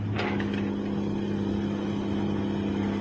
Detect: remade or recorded recorded